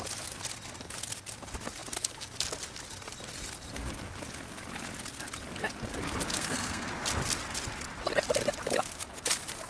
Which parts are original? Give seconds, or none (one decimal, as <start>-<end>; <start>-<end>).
0.0-6.3; 6.9-9.7